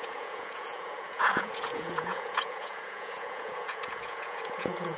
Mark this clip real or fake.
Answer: fake